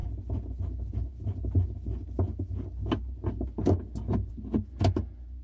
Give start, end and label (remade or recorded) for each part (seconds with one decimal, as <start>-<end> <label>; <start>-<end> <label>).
0.0-5.4 recorded

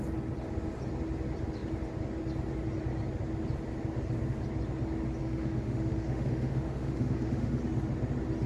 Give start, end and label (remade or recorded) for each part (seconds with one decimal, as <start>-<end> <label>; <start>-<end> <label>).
0.0-5.2 recorded; 5.2-7.6 remade; 7.6-8.5 recorded

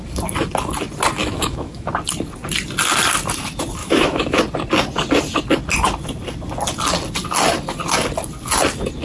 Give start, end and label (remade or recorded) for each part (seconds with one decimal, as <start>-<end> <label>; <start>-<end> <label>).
0.0-1.2 recorded; 1.2-1.9 remade; 1.9-3.8 recorded; 3.8-4.4 remade; 4.4-9.0 recorded